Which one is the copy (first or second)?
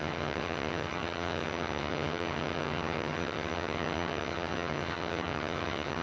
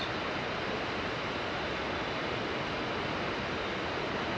first